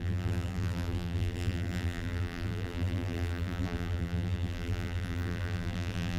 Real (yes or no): no